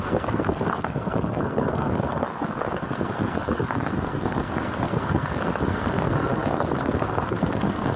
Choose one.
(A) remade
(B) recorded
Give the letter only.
A